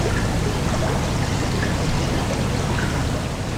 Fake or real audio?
real